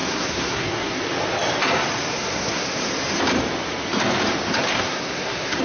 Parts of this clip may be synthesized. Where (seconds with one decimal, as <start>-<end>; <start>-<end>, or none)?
0.0-1.0; 2.1-2.9; 4.7-5.6